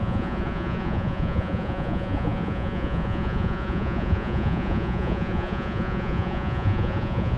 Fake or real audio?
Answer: fake